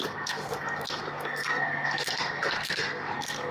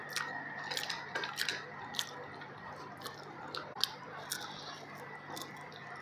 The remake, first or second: first